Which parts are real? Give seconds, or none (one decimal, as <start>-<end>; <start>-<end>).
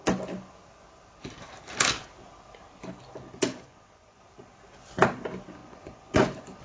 0.0-3.5; 4.2-5.6